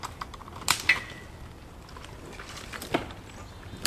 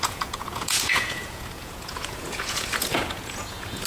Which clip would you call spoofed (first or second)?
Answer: second